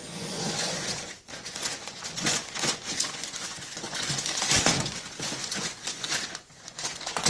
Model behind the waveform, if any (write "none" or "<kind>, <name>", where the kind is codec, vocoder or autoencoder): vocoder, Vocos